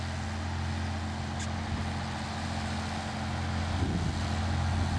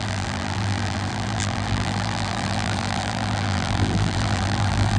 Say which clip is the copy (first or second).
second